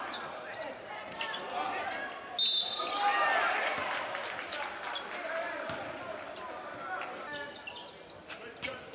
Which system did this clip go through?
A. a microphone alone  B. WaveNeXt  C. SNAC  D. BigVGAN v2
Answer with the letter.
A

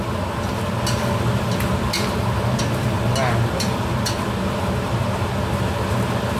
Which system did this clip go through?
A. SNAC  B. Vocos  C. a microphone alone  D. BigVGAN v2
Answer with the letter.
C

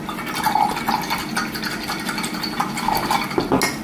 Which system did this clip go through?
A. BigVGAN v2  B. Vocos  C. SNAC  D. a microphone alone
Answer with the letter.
D